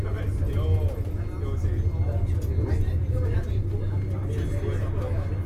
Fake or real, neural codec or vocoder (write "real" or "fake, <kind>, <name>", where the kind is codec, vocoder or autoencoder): real